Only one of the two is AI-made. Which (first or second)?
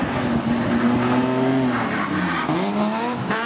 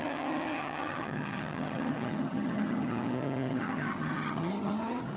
second